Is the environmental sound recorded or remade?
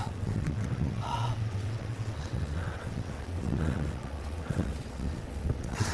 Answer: remade